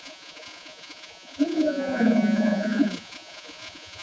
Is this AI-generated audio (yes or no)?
yes